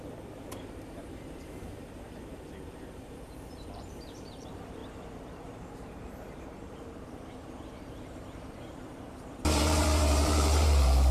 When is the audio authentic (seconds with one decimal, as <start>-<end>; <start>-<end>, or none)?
4.8-5.7